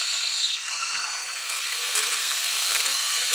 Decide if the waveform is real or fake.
fake